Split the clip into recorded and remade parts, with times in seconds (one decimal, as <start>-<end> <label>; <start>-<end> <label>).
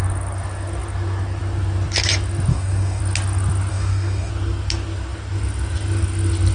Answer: 0.0-2.5 recorded; 2.5-3.0 remade; 3.0-3.7 recorded; 3.7-4.3 remade; 4.3-6.5 recorded